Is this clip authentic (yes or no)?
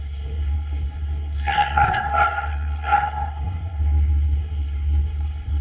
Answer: no